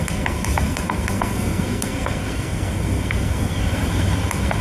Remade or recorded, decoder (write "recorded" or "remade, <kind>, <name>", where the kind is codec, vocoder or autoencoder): remade, codec, SNAC